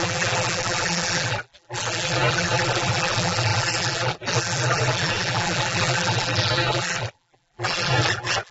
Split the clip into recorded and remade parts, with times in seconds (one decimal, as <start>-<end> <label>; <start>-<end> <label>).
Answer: 0.0-8.5 remade